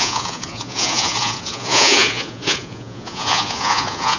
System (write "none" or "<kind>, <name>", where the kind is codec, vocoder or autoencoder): vocoder, Vocos